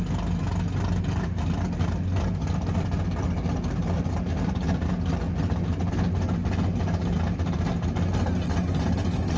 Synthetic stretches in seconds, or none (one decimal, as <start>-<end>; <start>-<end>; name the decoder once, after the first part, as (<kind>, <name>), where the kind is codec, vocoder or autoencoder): none